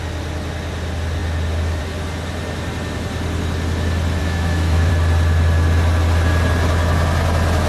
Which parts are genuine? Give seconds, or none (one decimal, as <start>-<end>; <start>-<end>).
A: 0.0-4.2; 4.9-7.7